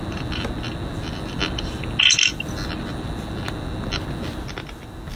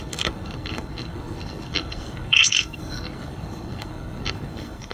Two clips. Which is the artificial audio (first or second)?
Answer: second